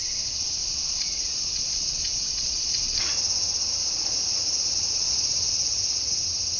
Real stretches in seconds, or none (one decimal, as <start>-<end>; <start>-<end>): 0.0-0.6; 2.8-3.8; 6.1-6.6